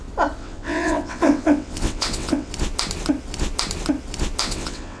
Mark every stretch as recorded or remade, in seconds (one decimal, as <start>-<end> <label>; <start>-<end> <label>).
0.0-0.4 recorded; 0.4-2.5 remade; 2.5-4.4 recorded; 4.4-5.0 remade